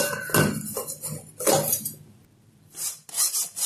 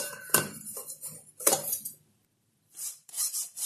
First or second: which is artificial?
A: second